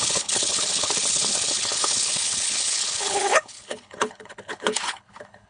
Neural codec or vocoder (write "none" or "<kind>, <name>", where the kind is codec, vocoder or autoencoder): codec, HILCodec